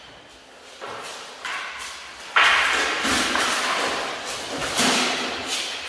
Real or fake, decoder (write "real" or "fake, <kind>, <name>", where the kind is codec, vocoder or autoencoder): real